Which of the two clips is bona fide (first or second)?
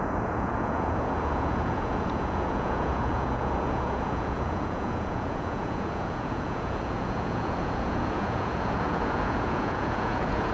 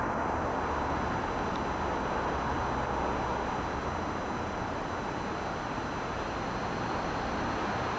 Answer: second